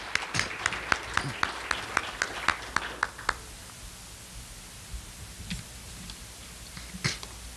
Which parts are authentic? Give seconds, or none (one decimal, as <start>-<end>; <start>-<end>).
0.0-7.6

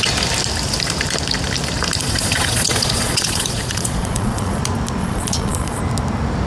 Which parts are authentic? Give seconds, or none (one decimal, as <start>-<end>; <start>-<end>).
0.0-2.0; 4.6-5.0; 5.8-6.5

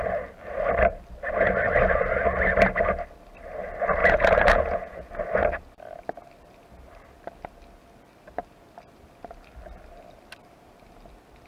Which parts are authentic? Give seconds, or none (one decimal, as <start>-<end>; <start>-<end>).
0.0-4.0; 5.1-11.5

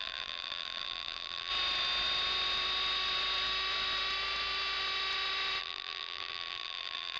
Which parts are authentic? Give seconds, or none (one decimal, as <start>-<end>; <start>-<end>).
1.5-5.6

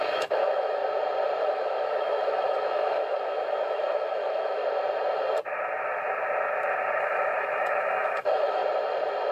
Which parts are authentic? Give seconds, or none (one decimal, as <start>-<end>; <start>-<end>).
0.8-1.4; 4.6-7.0; 8.6-9.3

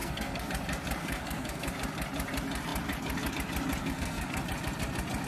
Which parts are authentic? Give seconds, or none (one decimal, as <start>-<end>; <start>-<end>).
0.5-1.0; 1.7-3.8; 4.4-5.3